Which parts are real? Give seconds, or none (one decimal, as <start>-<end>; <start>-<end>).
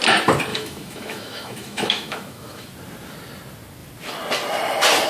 0.0-0.5; 2.7-5.1